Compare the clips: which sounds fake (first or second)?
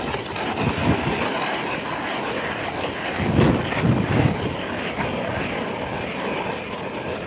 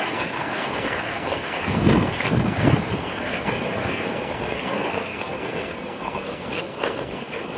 second